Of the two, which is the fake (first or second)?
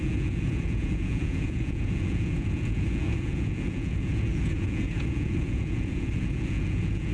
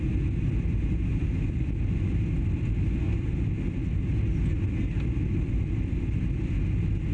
first